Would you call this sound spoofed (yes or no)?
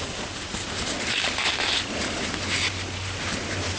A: no